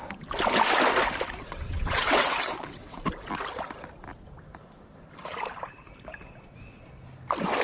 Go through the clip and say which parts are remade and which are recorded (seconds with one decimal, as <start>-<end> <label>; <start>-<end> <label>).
0.0-1.4 recorded; 1.4-3.0 remade; 3.0-7.6 recorded